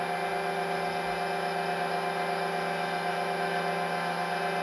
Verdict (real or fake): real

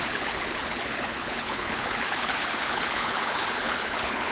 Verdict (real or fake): fake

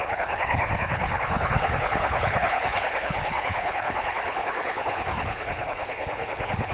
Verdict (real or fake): fake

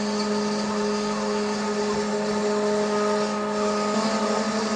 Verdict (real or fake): real